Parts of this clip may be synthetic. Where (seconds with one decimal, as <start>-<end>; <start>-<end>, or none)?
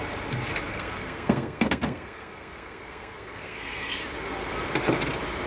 0.7-4.0